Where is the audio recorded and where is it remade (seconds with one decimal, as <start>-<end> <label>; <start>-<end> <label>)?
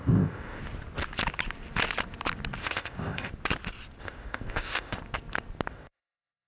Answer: 0.0-0.6 remade; 0.6-2.6 recorded; 2.6-3.3 remade; 3.3-4.0 recorded; 4.0-5.0 remade; 5.0-5.7 recorded; 5.7-6.5 remade